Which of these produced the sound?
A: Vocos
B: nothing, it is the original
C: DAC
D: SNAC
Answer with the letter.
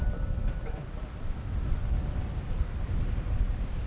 B